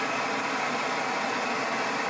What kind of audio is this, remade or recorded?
recorded